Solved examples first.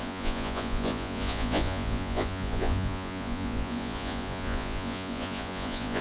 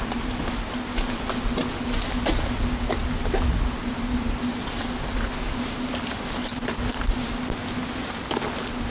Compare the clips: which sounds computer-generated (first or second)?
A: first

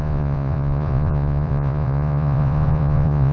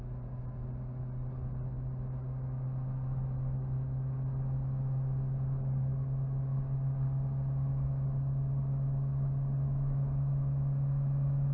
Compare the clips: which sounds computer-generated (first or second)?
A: first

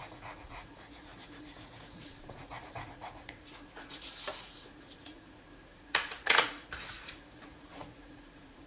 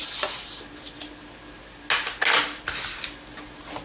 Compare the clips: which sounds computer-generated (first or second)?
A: first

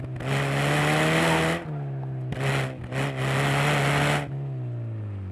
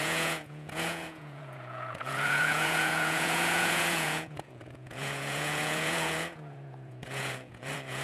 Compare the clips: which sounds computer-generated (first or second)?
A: second